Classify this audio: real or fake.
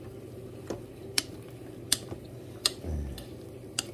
fake